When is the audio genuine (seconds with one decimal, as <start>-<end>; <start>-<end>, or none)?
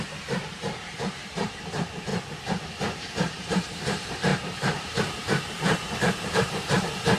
2.1-2.8